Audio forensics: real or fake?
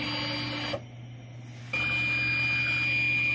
real